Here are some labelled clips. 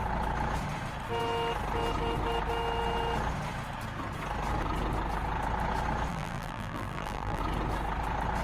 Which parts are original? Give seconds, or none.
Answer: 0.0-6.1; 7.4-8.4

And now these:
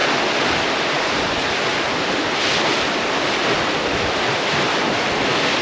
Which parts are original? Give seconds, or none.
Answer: 0.0-5.6

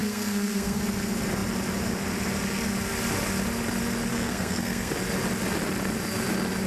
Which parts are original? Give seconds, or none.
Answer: 0.8-4.1; 4.9-6.7

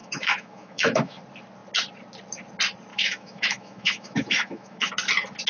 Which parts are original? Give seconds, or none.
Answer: 1.2-2.9; 4.9-5.5